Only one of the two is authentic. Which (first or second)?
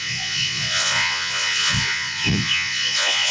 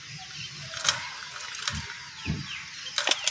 second